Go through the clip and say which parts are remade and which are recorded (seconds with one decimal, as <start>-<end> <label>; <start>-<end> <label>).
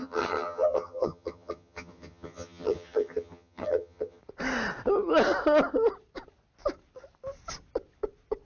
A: 0.0-4.2 remade; 4.2-8.4 recorded